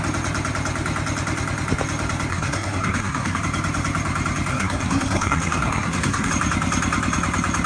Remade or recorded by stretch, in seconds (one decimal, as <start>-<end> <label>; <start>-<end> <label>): 0.0-2.3 recorded; 2.3-3.4 remade; 3.4-4.5 recorded; 4.5-6.3 remade; 6.3-7.7 recorded